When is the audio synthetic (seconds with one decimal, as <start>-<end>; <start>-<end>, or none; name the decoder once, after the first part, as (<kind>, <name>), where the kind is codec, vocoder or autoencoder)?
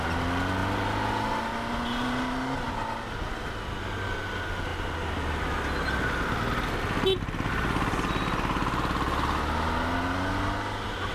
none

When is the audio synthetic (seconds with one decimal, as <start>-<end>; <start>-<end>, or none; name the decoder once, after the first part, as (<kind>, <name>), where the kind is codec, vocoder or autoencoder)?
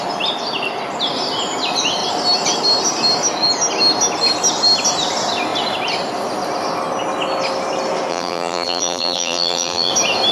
8.1-9.9 (vocoder, BigVGAN v2)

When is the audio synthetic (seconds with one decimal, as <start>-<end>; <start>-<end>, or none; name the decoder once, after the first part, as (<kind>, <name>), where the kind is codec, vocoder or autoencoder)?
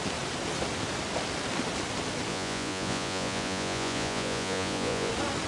2.3-5.1 (vocoder, Vocos)